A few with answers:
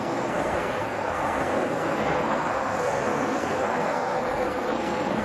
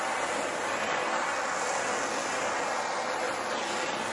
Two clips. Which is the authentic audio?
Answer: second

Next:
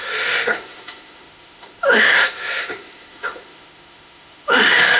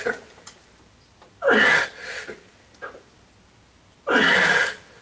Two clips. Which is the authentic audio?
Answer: second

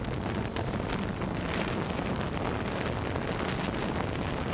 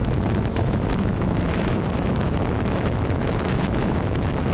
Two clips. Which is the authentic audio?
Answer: first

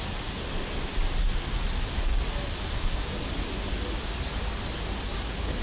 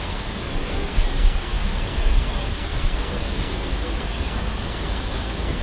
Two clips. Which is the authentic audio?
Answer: first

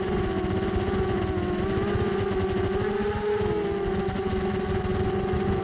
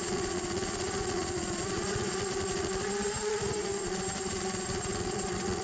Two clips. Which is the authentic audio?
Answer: first